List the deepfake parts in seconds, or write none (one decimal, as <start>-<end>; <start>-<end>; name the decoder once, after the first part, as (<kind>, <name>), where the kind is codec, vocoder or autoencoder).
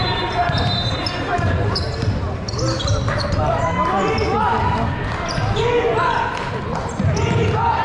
0.0-1.8 (vocoder, BigVGAN v2)